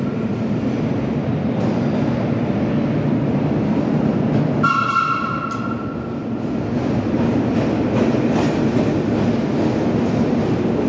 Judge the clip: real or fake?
real